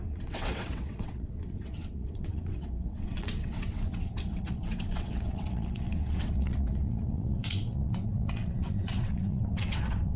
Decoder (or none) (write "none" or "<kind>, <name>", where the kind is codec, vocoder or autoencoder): vocoder, WaveNeXt